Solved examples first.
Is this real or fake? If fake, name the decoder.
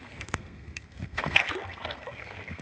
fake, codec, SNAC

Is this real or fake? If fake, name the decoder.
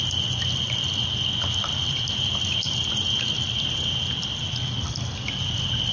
real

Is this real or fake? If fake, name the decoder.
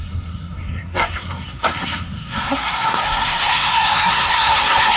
fake, codec, SNAC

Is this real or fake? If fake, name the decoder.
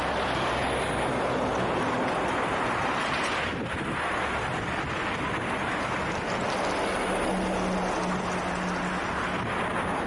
real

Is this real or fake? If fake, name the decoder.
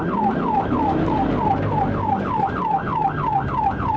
real